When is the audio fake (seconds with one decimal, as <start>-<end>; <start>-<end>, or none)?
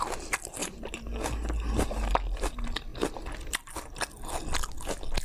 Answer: none